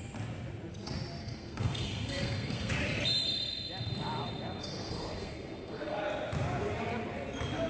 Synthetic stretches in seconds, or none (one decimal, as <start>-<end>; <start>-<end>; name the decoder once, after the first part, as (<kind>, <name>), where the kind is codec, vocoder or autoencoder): 1.2-2.7 (codec, SNAC); 4.6-6.0